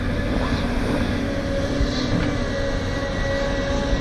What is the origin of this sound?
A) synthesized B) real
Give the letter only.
B